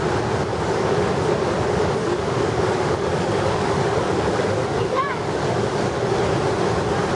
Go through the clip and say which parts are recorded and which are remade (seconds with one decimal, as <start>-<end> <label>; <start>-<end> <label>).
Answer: 0.0-0.5 recorded; 0.5-1.1 remade; 1.1-2.0 recorded; 2.0-6.2 remade; 6.2-7.2 recorded